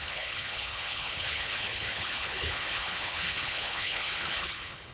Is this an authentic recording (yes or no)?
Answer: no